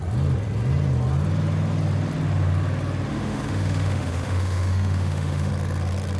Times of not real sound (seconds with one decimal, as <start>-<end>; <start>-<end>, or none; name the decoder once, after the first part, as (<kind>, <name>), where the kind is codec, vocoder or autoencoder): 3.1-5.5 (autoencoder, DAC-VAE)

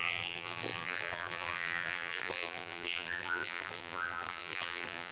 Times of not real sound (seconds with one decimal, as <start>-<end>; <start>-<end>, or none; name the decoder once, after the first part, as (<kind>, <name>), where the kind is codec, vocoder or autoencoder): 0.0-5.1 (vocoder, BigVGAN v2)

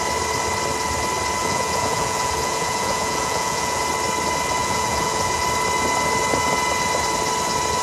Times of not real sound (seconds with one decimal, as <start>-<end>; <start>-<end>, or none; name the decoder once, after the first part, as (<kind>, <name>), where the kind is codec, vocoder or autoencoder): 1.4-3.8 (vocoder, Vocos); 4.6-5.4